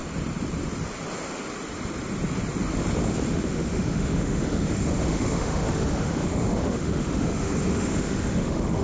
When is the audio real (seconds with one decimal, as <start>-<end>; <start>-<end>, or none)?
0.0-3.3